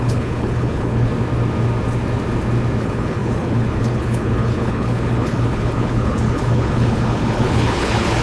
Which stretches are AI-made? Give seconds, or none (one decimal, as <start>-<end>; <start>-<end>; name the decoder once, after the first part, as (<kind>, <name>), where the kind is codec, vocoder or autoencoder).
0.0-1.1 (codec, HILCodec); 2.8-8.2